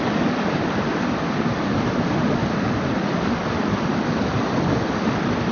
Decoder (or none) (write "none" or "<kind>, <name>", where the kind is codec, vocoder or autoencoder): none